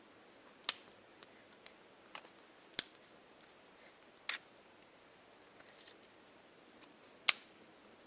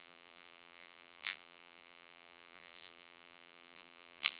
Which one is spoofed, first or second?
second